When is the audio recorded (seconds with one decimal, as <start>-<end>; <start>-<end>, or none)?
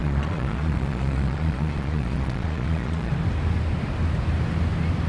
3.1-5.1